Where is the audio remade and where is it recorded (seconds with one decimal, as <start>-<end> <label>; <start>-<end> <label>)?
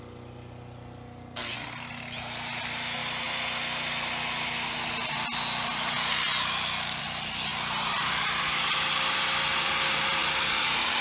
0.0-11.0 recorded